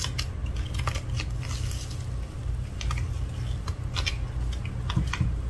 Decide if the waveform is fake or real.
real